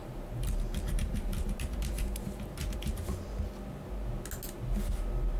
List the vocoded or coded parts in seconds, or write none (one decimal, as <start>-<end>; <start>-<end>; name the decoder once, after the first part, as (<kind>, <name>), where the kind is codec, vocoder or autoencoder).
0.0-3.2 (vocoder, BigVGAN v2)